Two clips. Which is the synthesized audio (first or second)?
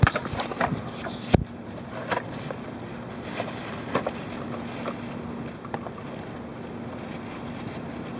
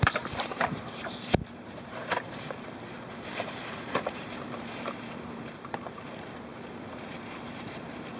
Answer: second